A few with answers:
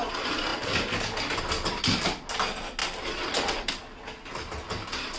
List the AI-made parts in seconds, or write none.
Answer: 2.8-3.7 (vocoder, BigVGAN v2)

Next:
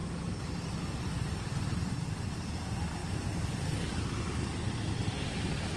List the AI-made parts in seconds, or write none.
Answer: 1.0-5.8 (vocoder, BigVGAN v2)

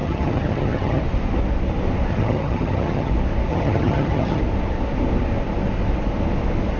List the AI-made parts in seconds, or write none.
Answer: 0.0-1.0 (vocoder, HiFi-GAN); 2.1-3.1; 3.5-4.4

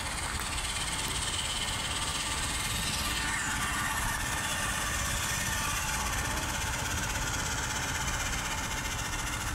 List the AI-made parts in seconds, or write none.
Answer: none

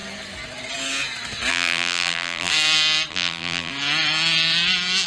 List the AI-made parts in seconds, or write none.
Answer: 1.5-2.5 (vocoder, BigVGAN v2); 3.1-3.7

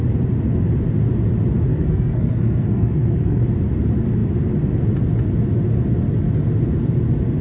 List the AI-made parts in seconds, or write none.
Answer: 1.7-3.4 (codec, SNAC)

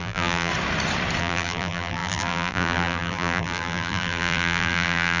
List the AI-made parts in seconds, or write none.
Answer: 0.0-0.5 (vocoder, BigVGAN v2); 1.2-5.2